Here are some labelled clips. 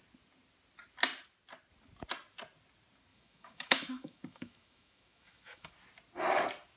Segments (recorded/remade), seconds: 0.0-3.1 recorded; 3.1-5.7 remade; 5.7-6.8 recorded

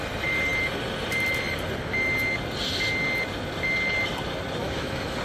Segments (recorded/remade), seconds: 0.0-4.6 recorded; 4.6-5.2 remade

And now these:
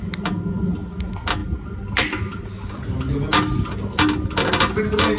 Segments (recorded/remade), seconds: 0.0-5.2 recorded

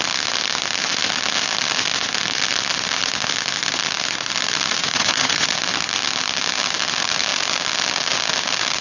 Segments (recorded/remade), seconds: 0.0-4.8 recorded; 4.8-5.5 remade; 5.5-8.8 recorded